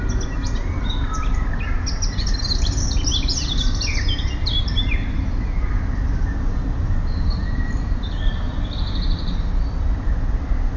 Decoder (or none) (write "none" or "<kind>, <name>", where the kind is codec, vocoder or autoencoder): none